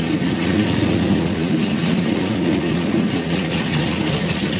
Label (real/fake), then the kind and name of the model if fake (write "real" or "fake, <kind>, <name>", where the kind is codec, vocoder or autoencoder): fake, vocoder, Vocos